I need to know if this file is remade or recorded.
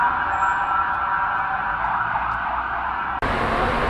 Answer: recorded